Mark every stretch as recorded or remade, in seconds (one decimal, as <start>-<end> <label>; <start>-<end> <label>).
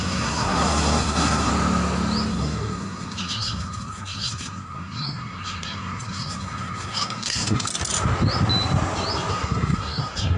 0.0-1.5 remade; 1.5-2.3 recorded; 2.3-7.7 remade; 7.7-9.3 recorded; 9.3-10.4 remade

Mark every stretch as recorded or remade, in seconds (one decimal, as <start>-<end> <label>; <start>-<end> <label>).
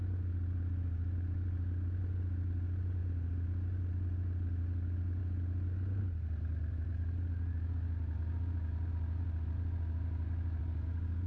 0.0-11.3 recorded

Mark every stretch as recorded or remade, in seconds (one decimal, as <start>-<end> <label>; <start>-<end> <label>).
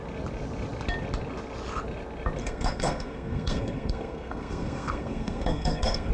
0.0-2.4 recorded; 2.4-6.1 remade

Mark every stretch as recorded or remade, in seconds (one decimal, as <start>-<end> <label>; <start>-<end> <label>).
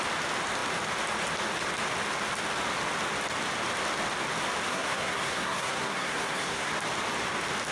0.0-4.7 recorded; 4.7-6.7 remade; 6.7-7.7 recorded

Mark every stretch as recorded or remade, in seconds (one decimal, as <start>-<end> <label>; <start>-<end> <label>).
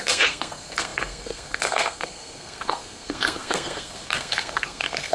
0.0-5.1 remade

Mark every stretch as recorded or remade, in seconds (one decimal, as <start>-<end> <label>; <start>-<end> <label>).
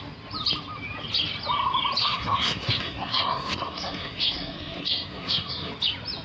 0.0-2.0 recorded; 2.0-5.7 remade; 5.7-6.2 recorded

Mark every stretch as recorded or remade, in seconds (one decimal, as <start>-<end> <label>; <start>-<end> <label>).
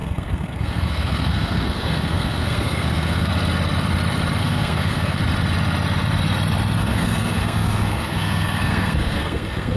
0.0-3.3 remade; 3.3-4.4 recorded; 4.4-5.2 remade; 5.2-6.8 recorded; 6.8-9.8 remade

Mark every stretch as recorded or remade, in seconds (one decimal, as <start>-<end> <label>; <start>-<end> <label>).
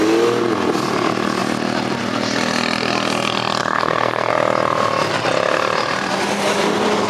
0.0-3.6 recorded; 3.6-4.3 remade; 4.3-7.1 recorded